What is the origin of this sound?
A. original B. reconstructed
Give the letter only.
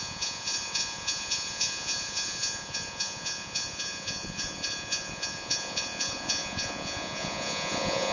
B